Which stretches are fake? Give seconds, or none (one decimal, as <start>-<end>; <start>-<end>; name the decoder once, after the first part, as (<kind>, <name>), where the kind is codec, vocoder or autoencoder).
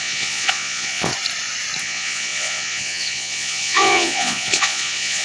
0.0-1.1 (vocoder, Vocos); 1.8-5.2